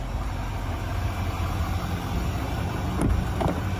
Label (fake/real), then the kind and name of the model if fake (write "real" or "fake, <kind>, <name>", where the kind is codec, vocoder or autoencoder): real